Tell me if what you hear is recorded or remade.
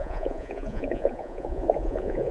remade